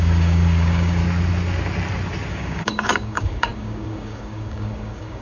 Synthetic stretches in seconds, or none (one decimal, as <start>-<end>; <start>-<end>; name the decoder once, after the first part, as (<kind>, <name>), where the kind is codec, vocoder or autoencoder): 0.0-1.0 (codec, DAC); 2.3-5.2